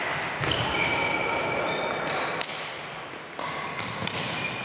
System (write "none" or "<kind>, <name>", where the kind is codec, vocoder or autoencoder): none